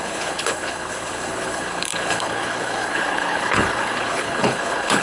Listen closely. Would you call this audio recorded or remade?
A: remade